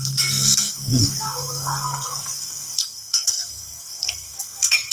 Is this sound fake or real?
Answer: fake